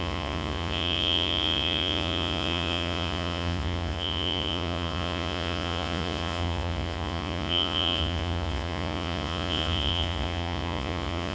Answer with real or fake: fake